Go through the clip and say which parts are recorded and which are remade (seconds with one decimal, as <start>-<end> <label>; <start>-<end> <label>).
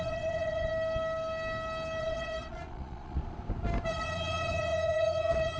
0.0-0.7 remade; 0.7-2.0 recorded; 2.0-3.2 remade; 3.2-3.9 recorded; 3.9-5.6 remade